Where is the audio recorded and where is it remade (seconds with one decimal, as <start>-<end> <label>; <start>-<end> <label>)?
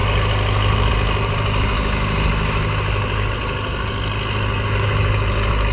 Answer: 0.0-5.7 recorded